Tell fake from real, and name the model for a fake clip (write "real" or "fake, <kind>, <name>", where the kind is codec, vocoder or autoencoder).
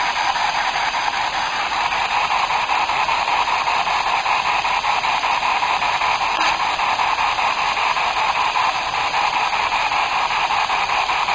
real